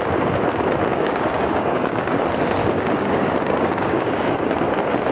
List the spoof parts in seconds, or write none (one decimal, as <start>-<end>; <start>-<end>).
0.9-2.2; 2.6-4.5